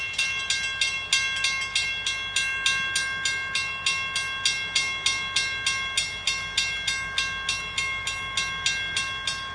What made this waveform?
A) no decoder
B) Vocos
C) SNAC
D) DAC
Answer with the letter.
A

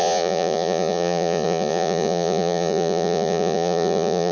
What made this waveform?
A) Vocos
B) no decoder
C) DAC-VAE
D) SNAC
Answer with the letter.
A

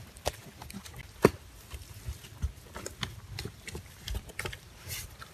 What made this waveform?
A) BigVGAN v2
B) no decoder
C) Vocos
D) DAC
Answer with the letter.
B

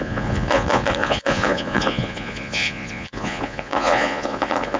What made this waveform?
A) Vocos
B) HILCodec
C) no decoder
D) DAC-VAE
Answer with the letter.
A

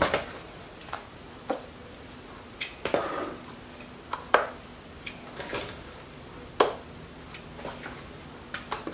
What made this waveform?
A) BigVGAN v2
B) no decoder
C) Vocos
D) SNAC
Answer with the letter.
B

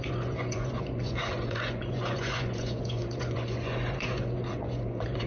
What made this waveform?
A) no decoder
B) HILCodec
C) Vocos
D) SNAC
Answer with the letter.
C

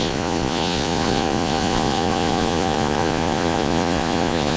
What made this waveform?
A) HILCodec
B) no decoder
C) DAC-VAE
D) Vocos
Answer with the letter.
D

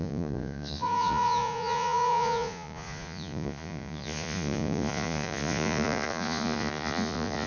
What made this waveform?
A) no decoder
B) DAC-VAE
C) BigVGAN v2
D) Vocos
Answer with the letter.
D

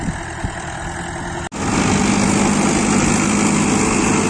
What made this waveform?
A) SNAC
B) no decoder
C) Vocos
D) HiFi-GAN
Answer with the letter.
B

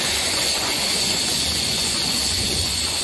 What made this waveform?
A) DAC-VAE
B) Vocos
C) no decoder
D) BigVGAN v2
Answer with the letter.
B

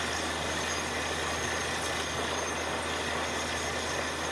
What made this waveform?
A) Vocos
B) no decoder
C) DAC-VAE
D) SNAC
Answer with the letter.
B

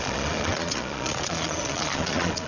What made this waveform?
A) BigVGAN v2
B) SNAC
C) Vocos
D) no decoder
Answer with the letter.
C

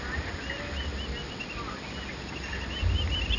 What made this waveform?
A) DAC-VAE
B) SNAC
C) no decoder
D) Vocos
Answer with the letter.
C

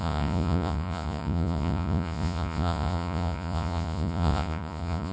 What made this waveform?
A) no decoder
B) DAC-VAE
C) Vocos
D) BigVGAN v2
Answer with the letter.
C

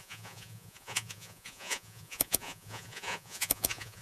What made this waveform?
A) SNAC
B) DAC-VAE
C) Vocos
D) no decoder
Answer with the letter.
C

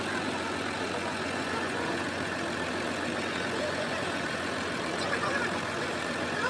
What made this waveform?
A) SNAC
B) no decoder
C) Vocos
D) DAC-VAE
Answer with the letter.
C